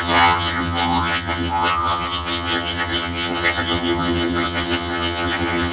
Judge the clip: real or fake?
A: fake